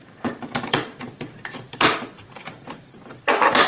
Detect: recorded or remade remade